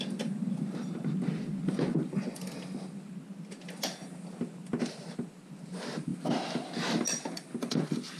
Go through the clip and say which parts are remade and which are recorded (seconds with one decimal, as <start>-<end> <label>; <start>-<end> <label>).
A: 0.0-8.2 recorded